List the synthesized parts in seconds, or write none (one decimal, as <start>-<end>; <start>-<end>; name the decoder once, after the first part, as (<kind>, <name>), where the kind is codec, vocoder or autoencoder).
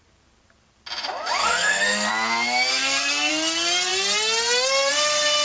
1.4-2.1 (codec, SNAC); 2.7-3.3